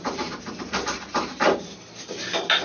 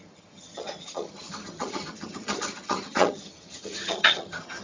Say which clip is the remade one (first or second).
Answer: second